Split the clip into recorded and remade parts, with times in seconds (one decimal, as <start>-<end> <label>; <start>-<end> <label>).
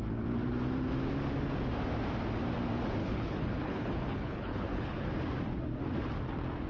0.0-3.0 recorded; 3.0-5.1 remade; 5.1-6.7 recorded